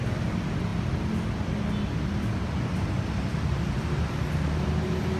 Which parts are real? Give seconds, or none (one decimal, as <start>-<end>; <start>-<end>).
0.0-5.2